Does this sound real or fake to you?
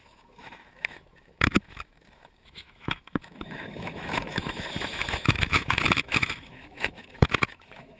fake